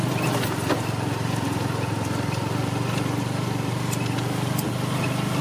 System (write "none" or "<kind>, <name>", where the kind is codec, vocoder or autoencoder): none